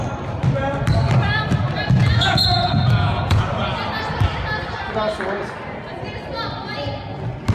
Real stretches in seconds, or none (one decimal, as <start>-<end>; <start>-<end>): 0.0-2.0; 3.4-7.5